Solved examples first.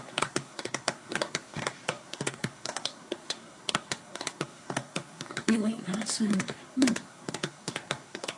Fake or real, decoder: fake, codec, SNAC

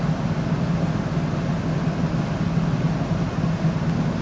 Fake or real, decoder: real